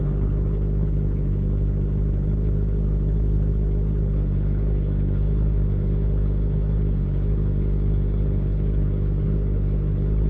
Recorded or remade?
remade